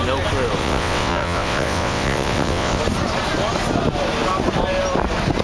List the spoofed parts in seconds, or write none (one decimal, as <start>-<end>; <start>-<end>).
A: 0.6-2.8